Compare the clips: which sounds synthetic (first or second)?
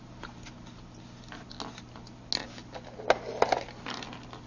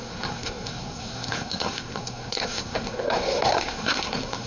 second